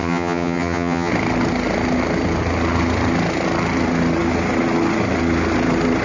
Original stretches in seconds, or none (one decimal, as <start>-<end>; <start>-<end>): 1.1-6.0